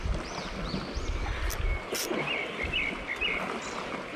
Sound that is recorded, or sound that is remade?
recorded